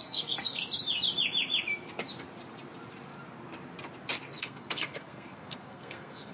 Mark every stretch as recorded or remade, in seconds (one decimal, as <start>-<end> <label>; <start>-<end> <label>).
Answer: 0.0-0.6 remade; 0.6-4.4 recorded; 4.4-6.3 remade